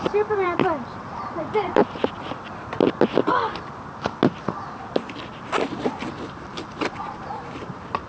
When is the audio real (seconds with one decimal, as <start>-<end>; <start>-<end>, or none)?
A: 1.8-5.4